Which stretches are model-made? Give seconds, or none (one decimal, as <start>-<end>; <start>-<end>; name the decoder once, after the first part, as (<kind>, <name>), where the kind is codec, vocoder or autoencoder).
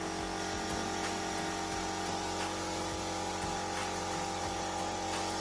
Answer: none